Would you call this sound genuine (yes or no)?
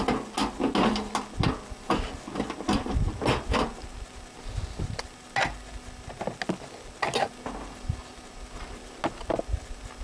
yes